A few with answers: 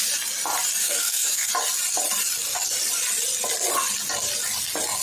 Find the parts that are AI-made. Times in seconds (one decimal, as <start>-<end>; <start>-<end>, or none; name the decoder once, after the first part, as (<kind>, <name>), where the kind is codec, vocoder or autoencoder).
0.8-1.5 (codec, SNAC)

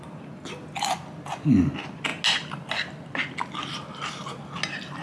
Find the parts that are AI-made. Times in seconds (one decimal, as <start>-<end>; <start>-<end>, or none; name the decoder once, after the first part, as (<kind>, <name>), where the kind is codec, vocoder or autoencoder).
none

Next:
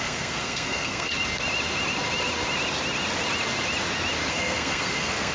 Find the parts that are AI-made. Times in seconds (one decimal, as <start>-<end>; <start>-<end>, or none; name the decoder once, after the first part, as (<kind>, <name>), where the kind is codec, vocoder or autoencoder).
0.0-1.1 (codec, SNAC); 4.3-5.3

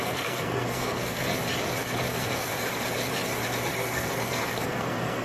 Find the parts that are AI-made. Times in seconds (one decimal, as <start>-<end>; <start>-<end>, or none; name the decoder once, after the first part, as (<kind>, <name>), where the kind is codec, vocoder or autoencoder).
0.0-1.3 (codec, SNAC); 2.1-2.5; 3.7-5.2

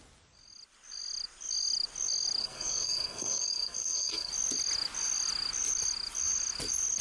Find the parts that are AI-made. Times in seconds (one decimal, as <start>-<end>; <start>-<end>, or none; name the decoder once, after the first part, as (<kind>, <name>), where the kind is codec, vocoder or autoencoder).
2.4-4.3 (codec, SNAC)

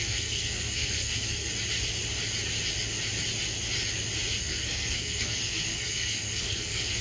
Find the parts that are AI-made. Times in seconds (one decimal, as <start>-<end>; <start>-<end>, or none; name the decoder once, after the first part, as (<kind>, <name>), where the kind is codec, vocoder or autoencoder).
0.0-1.5 (codec, SNAC); 4.4-7.0